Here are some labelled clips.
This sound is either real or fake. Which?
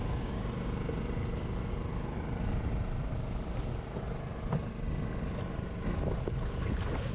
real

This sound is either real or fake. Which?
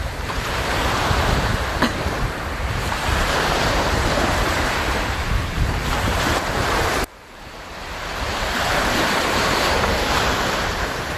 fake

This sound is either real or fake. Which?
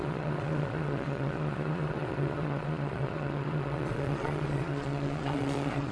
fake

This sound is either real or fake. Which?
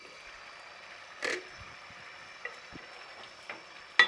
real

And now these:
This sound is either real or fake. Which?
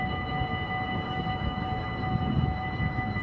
fake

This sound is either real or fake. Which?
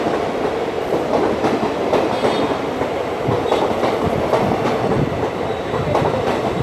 fake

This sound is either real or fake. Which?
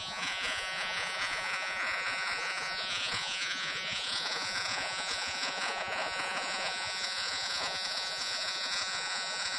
fake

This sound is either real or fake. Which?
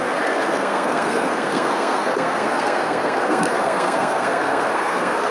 fake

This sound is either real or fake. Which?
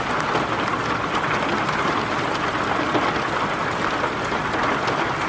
real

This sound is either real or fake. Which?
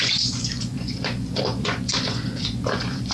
fake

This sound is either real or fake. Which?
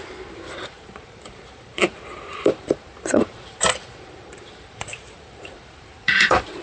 fake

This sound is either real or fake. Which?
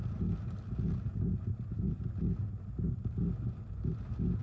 real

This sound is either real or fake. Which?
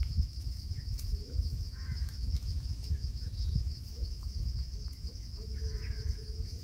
fake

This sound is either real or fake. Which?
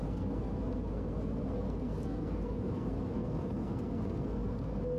fake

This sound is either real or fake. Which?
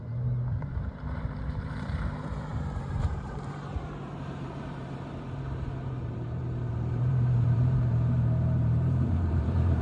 fake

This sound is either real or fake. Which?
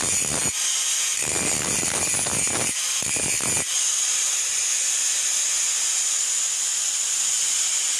real